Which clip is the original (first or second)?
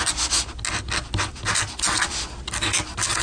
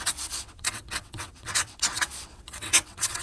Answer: first